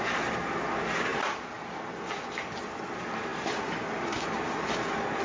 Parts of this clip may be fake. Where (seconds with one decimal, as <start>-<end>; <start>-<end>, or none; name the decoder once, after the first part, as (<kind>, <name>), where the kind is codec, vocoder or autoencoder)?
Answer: 3.3-5.2 (vocoder, BigVGAN v2)

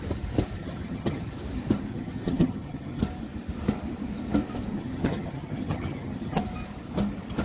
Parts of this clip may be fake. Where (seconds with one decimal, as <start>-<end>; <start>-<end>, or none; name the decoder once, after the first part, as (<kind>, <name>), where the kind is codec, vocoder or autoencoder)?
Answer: 0.6-1.3 (vocoder, HiFi-GAN); 1.9-3.0; 4.7-6.4

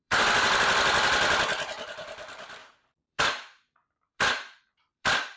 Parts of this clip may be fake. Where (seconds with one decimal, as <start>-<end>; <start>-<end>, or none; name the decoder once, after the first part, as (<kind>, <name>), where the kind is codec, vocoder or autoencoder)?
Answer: 0.0-5.4 (vocoder, BigVGAN v2)

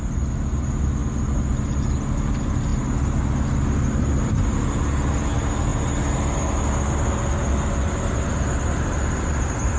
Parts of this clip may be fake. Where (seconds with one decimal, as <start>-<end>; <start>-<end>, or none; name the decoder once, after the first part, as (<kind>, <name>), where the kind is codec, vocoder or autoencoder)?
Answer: none

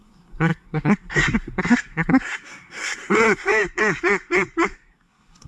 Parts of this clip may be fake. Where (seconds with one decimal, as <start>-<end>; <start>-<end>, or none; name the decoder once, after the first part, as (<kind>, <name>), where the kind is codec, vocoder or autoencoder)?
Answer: 0.0-5.5 (codec, SNAC)

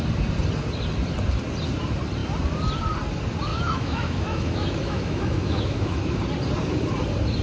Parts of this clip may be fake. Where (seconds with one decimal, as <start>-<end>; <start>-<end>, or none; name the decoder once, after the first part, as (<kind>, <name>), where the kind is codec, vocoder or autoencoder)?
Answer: 3.5-6.2 (autoencoder, DAC-VAE)

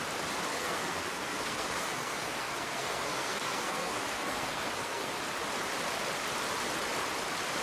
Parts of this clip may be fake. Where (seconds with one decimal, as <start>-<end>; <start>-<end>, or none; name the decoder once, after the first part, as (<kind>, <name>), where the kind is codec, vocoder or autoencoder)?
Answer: 0.5-5.1 (codec, SNAC)